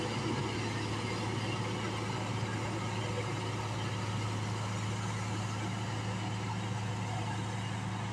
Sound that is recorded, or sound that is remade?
recorded